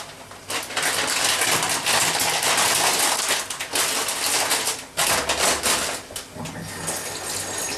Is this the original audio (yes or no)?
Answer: yes